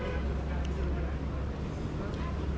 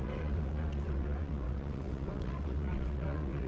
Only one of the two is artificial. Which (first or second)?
second